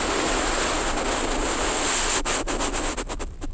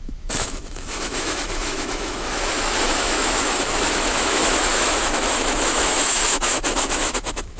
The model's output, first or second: second